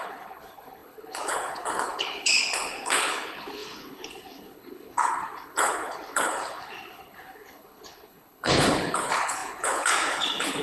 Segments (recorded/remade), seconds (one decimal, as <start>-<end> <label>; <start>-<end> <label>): 0.0-10.6 remade